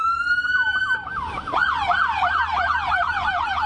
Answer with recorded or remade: recorded